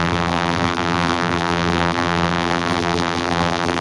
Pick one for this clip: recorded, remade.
remade